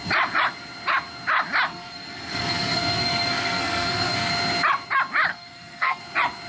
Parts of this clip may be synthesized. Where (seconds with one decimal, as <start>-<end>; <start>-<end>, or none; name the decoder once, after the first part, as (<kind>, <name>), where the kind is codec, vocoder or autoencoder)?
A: 1.7-4.3 (codec, SNAC); 5.3-6.0